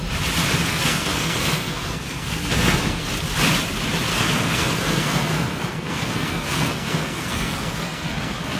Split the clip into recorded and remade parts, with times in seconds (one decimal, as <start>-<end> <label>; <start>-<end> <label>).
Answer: 0.0-0.7 recorded; 0.7-3.1 remade; 3.1-4.1 recorded; 4.1-8.6 remade